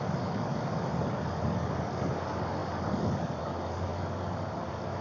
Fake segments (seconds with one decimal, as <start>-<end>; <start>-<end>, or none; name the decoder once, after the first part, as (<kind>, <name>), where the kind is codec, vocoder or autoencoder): 0.0-5.0 (codec, DAC)